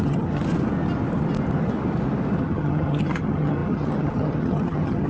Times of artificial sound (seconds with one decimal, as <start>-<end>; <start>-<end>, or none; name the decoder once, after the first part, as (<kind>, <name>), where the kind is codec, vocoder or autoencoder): 0.0-0.4 (vocoder, HiFi-GAN); 2.4-5.1